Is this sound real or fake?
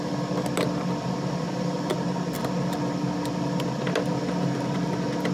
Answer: real